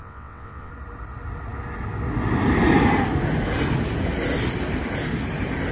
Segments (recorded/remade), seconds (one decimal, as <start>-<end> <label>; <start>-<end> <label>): 0.0-0.7 remade; 0.7-5.7 recorded